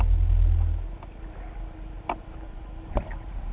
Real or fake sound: real